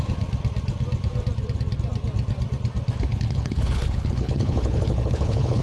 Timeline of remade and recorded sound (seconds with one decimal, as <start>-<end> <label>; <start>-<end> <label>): 0.0-3.1 recorded; 3.1-5.6 remade